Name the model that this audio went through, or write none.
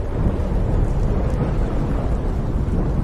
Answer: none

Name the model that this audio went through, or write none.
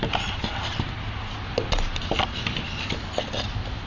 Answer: none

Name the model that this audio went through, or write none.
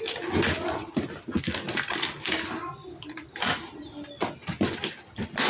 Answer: none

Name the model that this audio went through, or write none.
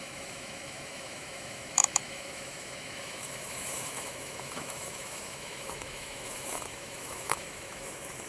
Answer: autoencoder, DAC-VAE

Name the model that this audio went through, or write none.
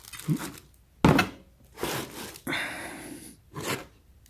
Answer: none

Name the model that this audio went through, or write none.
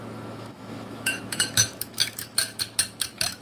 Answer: autoencoder, DAC-VAE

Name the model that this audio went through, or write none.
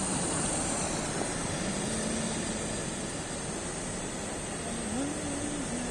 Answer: none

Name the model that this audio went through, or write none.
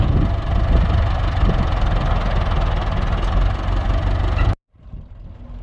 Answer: none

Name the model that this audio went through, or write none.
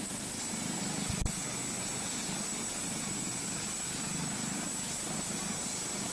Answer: none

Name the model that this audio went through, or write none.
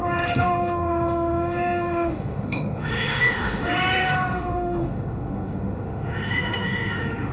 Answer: autoencoder, DAC-VAE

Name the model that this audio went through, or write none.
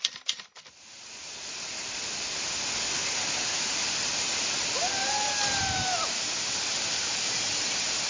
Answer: none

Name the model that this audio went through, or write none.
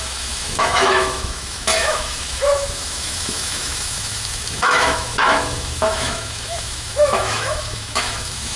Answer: autoencoder, DAC-VAE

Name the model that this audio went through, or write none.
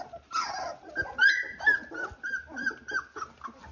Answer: none